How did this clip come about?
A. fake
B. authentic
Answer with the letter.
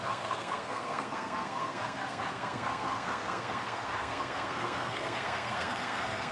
A